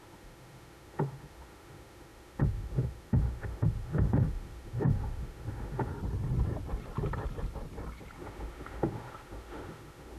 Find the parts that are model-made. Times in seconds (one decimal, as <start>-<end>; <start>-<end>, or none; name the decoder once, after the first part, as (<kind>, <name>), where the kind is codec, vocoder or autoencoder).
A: 0.0-5.9 (autoencoder, DAC-VAE); 8.2-10.2